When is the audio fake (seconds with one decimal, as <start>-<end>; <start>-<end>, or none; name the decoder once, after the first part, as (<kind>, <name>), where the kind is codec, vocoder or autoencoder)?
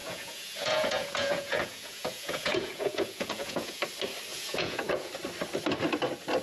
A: 0.0-3.8 (vocoder, Vocos); 4.3-5.1